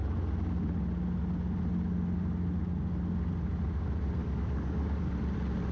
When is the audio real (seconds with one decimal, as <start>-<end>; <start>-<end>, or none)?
0.0-4.2; 5.1-5.7